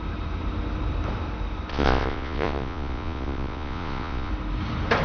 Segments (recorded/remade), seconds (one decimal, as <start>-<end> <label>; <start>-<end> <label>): 0.0-1.7 recorded; 1.7-4.3 remade; 4.3-5.0 recorded